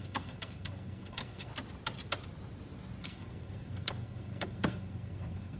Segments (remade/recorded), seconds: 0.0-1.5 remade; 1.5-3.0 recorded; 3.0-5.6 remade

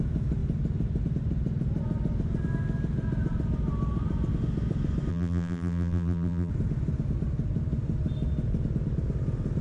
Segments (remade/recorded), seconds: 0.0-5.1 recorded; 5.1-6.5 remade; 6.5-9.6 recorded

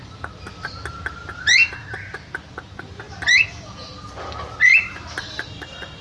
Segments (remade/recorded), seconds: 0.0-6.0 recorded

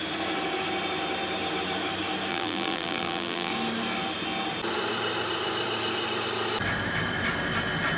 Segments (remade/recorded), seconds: 0.0-2.3 recorded; 2.3-3.5 remade; 3.5-8.0 recorded

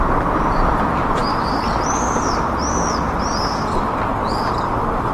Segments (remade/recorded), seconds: 0.0-5.1 recorded

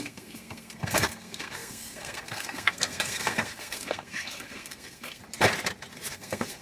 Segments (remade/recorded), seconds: 0.0-5.2 remade; 5.2-6.1 recorded; 6.1-6.6 remade

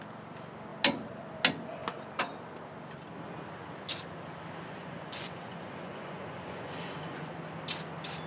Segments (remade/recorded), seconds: 0.0-4.7 recorded; 4.7-7.3 remade; 7.3-8.3 recorded